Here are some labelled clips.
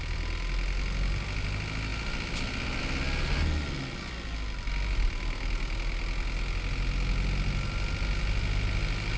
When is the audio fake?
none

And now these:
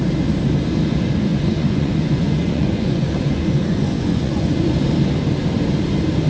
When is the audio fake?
1.3-4.7 (vocoder, Vocos)

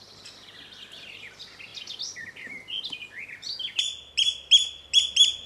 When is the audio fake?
none

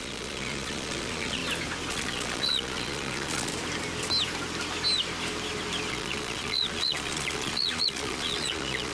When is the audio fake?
0.0-1.4 (vocoder, Vocos); 1.9-3.5; 5.9-8.9